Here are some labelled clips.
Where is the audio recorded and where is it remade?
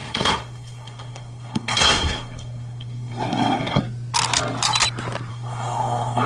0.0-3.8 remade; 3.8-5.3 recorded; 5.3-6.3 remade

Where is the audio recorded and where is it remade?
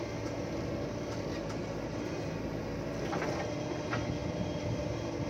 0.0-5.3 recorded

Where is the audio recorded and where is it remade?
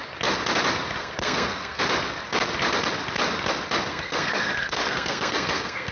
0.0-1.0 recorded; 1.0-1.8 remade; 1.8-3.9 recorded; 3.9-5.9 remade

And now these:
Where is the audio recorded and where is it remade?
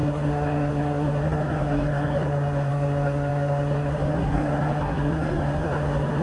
0.0-6.2 remade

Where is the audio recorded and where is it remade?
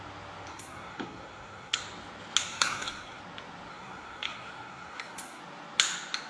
0.0-0.5 recorded; 0.5-1.8 remade; 1.8-2.5 recorded; 2.5-3.2 remade; 3.2-3.7 recorded; 3.7-5.4 remade; 5.4-6.3 recorded